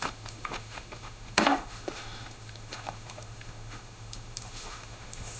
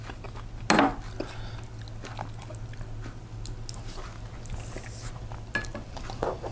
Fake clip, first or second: first